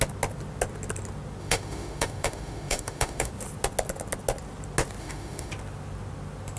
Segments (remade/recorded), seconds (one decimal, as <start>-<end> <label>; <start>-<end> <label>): 0.0-1.4 recorded; 1.4-3.3 remade; 3.3-5.0 recorded; 5.0-5.5 remade; 5.5-6.6 recorded